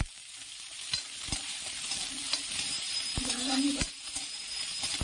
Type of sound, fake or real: fake